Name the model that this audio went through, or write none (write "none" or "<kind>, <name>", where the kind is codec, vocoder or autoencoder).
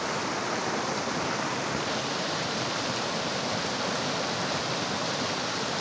vocoder, BigVGAN v2